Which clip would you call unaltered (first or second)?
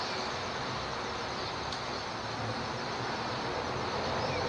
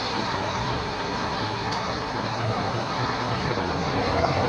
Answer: first